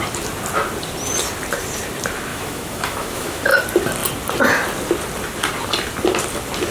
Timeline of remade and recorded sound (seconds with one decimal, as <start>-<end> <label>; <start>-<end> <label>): 0.0-2.3 recorded; 2.3-3.4 remade; 3.4-6.7 recorded